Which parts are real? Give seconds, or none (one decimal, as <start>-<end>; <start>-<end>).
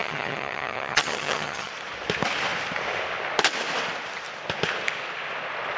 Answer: 1.7-5.8